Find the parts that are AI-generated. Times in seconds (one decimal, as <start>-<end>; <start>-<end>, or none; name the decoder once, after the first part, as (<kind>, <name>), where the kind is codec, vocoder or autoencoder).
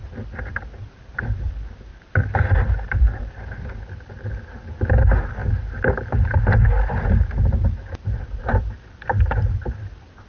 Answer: 1.9-3.3 (vocoder, BigVGAN v2)